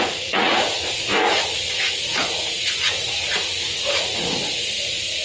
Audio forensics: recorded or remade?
remade